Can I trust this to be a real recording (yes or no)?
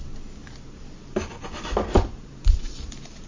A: yes